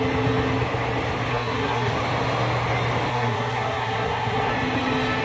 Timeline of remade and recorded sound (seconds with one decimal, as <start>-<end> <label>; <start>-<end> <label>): 0.0-1.3 recorded; 1.3-1.9 remade; 1.9-3.1 recorded; 3.1-4.5 remade; 4.5-5.2 recorded